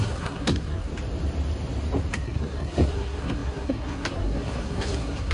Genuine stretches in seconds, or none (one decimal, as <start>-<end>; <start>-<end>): 0.9-2.1